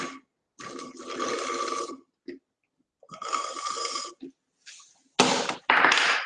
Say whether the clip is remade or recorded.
recorded